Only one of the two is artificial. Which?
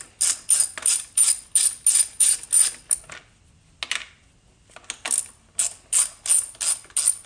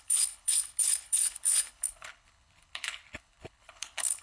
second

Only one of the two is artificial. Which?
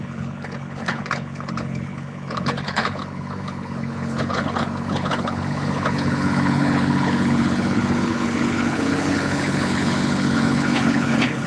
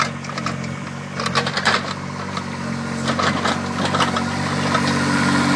first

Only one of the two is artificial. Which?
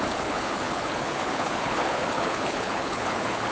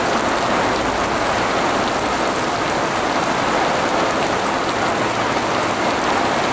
first